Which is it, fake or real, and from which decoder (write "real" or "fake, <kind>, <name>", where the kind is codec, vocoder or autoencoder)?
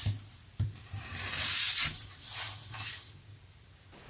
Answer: fake, vocoder, BigVGAN v2